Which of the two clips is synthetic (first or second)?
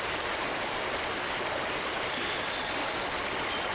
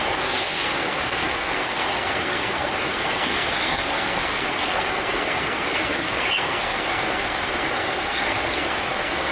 second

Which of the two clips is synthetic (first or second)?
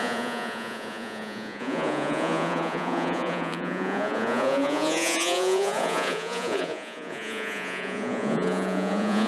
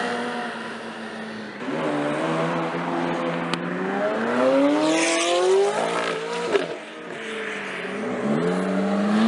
first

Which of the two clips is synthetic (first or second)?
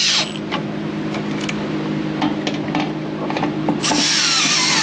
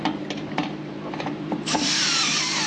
second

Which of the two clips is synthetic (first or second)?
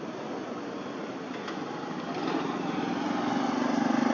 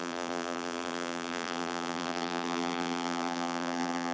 second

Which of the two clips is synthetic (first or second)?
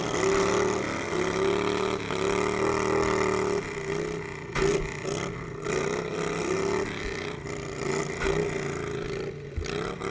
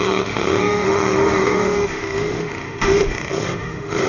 second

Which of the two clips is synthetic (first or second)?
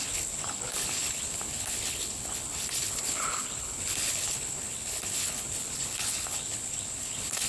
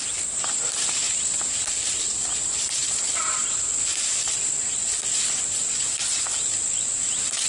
first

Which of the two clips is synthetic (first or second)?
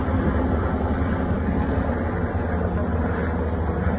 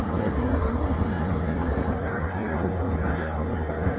second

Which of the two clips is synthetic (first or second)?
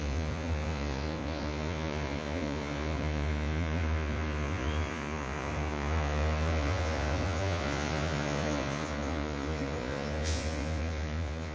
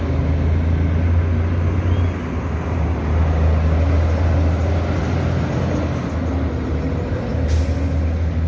first